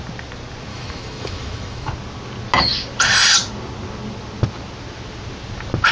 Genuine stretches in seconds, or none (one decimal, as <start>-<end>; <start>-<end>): 0.0-0.7; 1.9-5.9

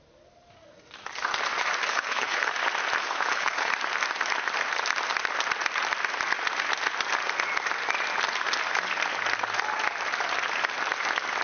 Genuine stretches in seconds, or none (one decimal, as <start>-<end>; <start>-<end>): 0.0-1.9; 2.5-3.0; 3.7-11.4

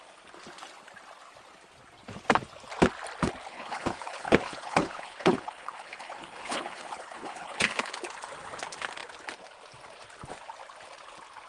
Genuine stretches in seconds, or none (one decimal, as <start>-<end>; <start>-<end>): 0.0-3.5; 7.9-11.5

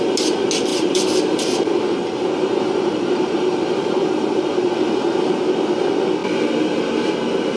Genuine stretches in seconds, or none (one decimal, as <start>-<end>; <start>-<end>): 0.0-0.7; 5.3-7.6

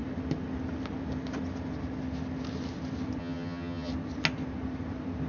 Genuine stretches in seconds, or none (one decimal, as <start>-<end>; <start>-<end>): 0.0-3.2; 3.9-5.3